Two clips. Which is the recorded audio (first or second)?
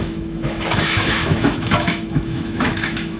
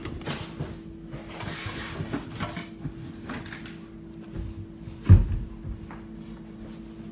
second